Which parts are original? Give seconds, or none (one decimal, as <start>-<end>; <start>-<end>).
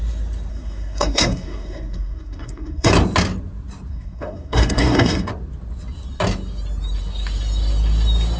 0.0-0.5; 2.9-3.9; 5.3-8.4